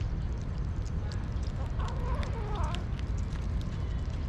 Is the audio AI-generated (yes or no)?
no